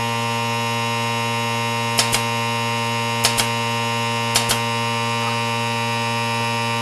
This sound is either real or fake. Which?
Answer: real